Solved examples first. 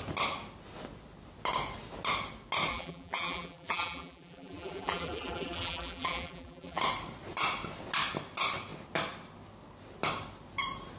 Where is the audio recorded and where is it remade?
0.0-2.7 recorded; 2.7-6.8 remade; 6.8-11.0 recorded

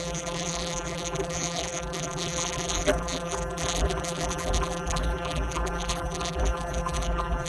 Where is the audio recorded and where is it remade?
0.0-7.5 remade